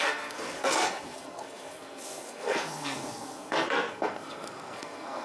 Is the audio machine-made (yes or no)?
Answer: yes